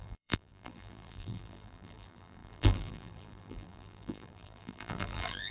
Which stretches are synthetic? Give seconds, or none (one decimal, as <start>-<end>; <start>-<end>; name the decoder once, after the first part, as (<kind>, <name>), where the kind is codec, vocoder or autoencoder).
0.0-5.5 (vocoder, BigVGAN v2)